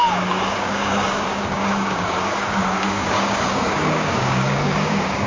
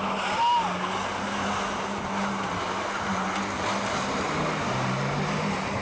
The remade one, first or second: first